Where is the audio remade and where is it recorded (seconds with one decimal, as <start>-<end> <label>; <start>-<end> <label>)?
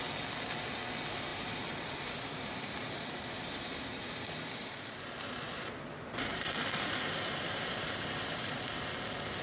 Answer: 0.0-1.3 recorded; 1.3-5.7 remade; 5.7-6.3 recorded; 6.3-8.6 remade; 8.6-9.4 recorded